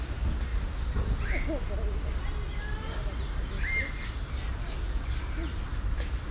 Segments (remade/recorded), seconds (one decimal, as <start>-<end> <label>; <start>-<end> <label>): 0.0-4.6 recorded; 4.6-5.2 remade; 5.2-6.3 recorded